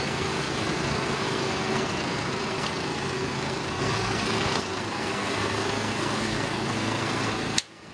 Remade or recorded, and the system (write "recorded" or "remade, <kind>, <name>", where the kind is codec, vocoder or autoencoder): remade, codec, SNAC